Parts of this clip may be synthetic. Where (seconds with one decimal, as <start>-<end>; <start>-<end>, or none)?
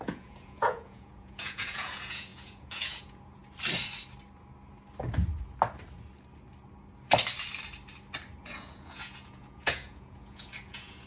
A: 0.0-3.4; 8.4-11.1